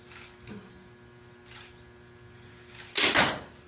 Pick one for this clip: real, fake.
real